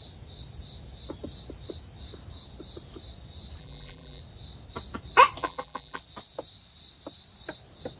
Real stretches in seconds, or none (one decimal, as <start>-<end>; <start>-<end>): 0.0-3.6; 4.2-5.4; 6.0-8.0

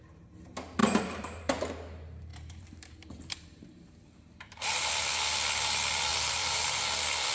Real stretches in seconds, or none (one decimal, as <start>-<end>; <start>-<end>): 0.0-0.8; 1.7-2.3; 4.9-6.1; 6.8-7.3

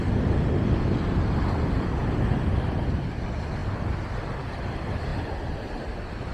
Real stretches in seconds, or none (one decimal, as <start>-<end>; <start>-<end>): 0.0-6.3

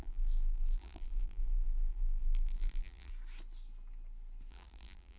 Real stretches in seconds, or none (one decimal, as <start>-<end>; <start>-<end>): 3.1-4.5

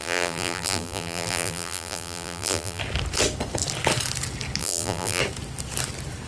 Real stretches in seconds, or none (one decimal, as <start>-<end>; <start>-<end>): 2.8-4.6; 5.2-6.3